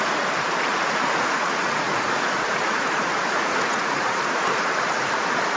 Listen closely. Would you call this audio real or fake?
fake